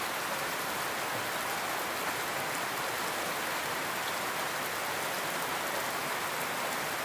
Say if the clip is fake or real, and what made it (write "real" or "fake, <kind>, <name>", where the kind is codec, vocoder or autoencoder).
real